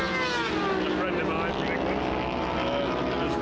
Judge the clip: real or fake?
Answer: real